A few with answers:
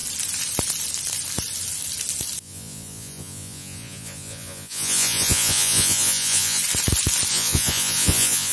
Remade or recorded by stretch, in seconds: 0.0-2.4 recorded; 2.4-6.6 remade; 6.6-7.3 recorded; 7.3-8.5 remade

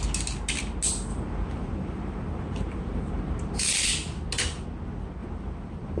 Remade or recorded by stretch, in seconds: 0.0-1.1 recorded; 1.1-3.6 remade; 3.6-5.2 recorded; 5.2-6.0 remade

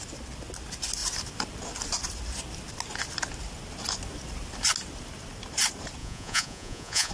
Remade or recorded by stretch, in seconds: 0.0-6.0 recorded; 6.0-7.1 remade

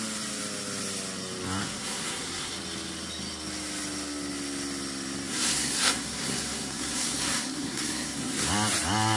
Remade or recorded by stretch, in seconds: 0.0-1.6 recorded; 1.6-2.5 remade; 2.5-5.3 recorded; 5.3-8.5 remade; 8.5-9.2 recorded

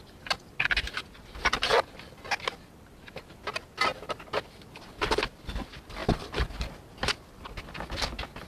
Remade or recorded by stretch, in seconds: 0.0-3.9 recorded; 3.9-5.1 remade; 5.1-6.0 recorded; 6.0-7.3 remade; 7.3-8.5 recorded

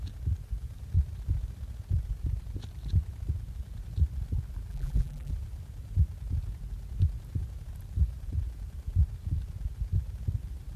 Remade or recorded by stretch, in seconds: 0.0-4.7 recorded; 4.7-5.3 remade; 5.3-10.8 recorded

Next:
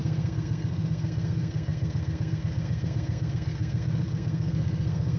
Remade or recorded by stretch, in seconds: 0.0-5.2 remade